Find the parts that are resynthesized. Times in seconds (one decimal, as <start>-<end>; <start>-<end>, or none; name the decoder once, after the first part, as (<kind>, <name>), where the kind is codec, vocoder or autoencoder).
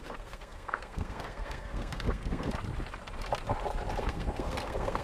0.0-2.5 (codec, SNAC); 4.0-5.0